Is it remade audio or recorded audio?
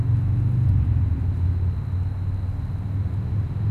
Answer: recorded